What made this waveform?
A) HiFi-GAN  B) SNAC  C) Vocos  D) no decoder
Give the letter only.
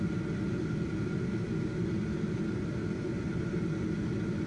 D